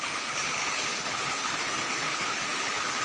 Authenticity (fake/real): fake